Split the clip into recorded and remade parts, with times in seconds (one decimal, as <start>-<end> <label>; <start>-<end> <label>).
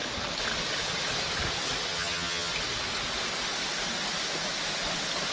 0.0-1.9 recorded; 1.9-2.5 remade; 2.5-5.3 recorded